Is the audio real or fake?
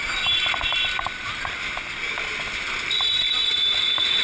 real